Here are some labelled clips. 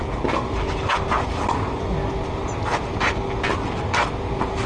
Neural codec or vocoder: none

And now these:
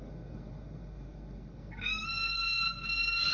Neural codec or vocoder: codec, SNAC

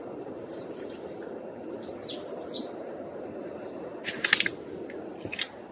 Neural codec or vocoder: none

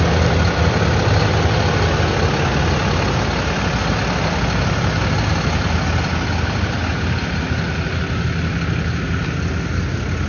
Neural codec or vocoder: none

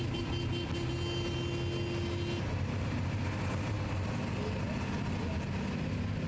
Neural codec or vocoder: none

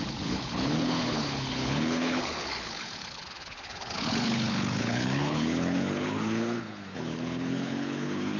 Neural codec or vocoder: codec, HILCodec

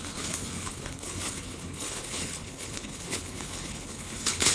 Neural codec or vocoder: codec, HILCodec